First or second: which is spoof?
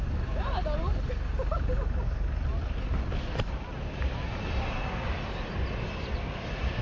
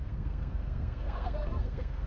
second